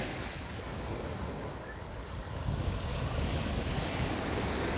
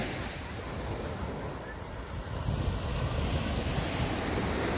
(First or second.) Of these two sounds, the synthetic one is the first